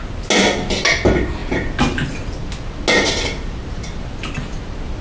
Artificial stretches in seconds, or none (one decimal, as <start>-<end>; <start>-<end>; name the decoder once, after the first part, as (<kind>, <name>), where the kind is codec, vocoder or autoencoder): none